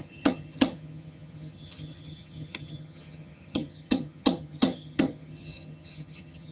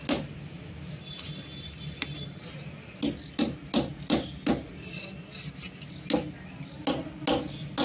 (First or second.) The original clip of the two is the second